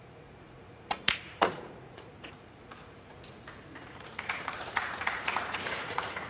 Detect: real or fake fake